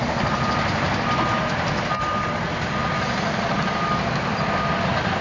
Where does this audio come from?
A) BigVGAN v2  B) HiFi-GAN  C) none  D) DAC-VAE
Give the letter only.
C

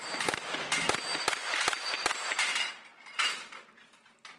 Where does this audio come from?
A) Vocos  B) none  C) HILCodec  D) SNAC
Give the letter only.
B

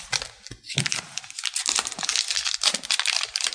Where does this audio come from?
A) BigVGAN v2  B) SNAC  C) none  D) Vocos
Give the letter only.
C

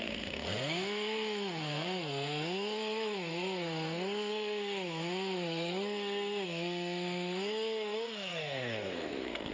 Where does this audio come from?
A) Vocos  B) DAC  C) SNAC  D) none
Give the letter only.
C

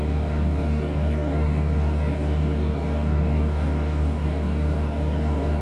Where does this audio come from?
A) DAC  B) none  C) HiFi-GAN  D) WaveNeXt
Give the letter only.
A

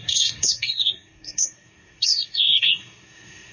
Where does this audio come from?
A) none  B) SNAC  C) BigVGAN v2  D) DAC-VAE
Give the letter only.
B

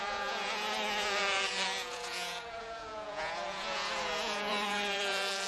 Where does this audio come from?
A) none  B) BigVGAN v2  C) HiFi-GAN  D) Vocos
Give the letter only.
D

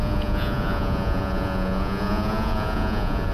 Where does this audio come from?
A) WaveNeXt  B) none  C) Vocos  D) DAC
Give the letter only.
C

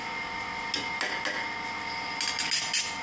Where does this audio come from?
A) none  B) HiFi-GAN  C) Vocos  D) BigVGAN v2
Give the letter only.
A